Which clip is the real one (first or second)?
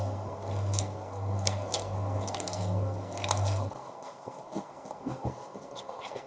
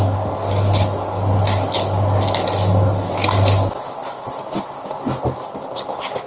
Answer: second